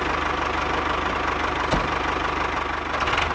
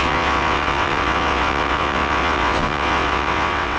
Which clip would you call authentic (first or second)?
first